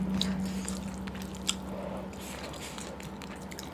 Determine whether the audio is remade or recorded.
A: recorded